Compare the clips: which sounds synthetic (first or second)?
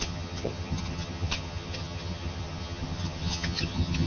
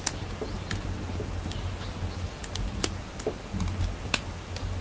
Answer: first